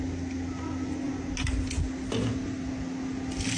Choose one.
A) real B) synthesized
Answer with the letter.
A